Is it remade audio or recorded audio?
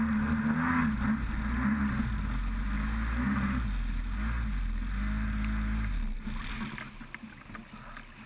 recorded